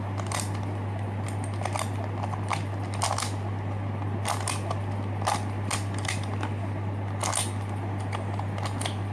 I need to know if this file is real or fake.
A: real